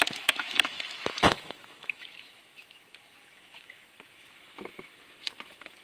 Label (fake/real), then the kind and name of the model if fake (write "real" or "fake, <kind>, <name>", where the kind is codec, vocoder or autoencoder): fake, autoencoder, DAC-VAE